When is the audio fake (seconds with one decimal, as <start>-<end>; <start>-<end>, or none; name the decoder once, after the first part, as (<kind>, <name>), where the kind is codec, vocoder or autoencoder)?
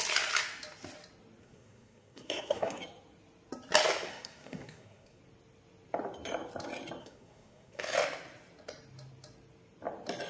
1.4-2.8 (codec, SNAC); 4.1-5.2; 7.0-7.8